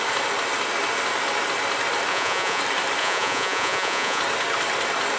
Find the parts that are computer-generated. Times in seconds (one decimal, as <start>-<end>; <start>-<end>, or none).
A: 2.1-2.6; 3.0-4.2